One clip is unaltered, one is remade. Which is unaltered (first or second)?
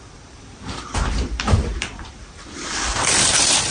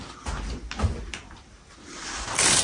second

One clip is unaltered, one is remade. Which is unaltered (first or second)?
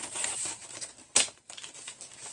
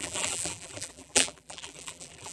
first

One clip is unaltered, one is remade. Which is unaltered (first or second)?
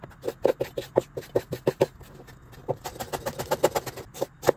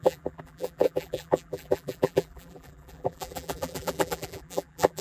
first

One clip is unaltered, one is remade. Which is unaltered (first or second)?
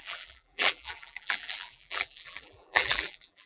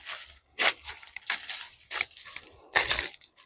second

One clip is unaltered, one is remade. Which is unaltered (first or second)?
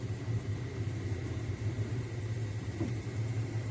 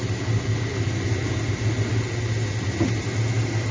second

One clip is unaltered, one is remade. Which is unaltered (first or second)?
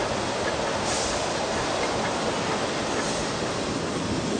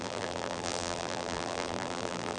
first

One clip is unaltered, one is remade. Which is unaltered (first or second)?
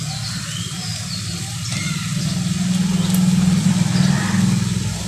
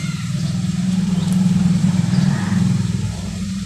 first